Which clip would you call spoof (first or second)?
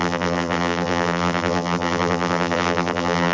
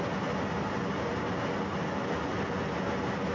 first